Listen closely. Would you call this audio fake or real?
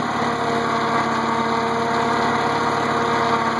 real